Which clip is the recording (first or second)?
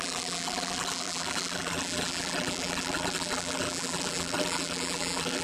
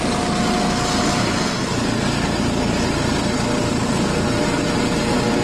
second